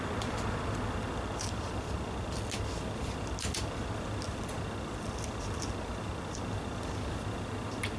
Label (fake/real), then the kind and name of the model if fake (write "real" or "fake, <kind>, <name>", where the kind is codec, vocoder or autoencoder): real